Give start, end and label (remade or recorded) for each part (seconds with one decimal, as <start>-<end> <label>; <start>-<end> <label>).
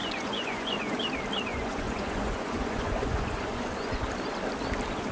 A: 0.0-1.0 remade; 1.0-1.5 recorded; 1.5-4.0 remade; 4.0-5.1 recorded